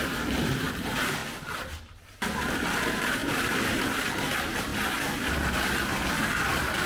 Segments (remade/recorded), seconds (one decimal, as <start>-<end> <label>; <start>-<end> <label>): 0.0-4.7 remade; 4.7-6.2 recorded; 6.2-6.9 remade